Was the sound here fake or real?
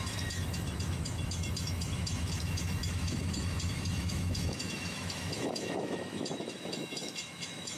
fake